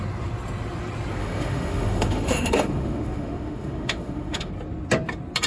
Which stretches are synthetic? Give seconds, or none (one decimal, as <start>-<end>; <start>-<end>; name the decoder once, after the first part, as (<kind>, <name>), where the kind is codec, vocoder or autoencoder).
1.2-4.5 (autoencoder, DAC-VAE)